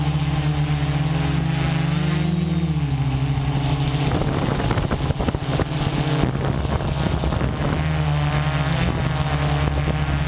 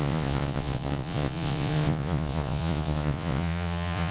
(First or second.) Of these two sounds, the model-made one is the second